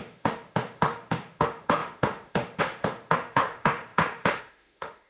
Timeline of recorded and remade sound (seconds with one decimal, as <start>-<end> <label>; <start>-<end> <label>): 0.0-5.1 remade